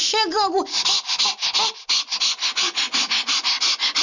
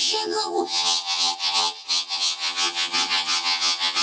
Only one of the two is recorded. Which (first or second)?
first